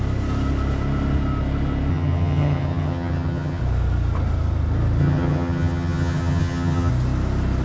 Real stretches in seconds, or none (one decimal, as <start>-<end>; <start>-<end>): 0.0-1.9; 3.6-5.0; 6.9-7.6